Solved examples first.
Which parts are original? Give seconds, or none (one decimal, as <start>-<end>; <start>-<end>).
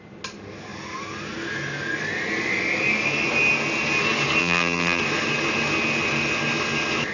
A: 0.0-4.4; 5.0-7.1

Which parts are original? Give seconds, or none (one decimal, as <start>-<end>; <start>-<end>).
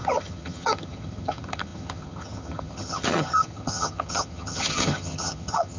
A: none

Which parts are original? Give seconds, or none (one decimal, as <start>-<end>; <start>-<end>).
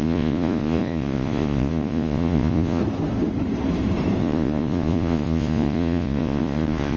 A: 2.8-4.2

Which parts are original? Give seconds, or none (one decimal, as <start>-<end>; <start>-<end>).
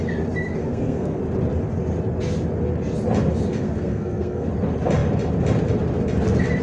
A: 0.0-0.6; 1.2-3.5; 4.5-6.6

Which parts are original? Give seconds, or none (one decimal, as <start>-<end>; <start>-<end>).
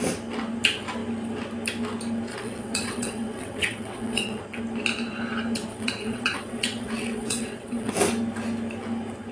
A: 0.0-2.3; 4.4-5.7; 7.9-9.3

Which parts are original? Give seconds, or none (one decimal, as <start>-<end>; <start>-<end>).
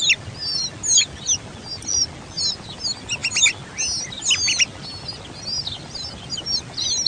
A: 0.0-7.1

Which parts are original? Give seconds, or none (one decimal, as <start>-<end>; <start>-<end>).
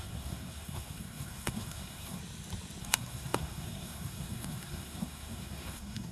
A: 2.2-2.8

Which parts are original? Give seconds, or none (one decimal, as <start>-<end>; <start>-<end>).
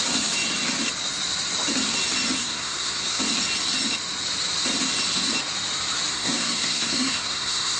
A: 0.0-2.4; 3.2-6.1